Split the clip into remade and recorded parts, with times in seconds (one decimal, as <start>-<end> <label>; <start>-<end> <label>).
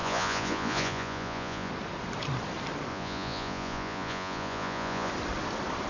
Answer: 0.0-1.7 remade; 1.7-2.9 recorded; 2.9-5.1 remade; 5.1-5.9 recorded